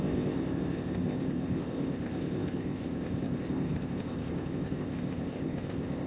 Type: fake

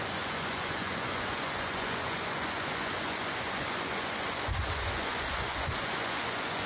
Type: fake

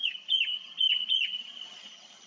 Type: fake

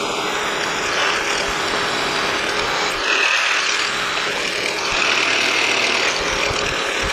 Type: real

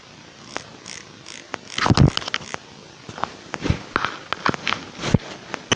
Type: real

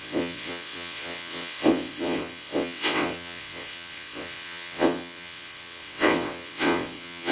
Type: fake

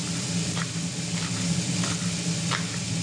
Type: real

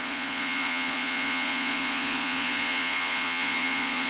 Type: fake